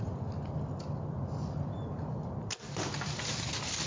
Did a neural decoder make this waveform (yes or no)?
no